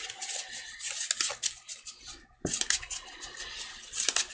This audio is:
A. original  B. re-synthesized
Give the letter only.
A